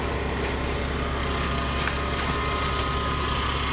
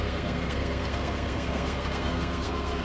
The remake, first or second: second